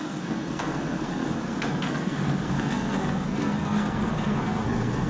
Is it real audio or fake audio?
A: fake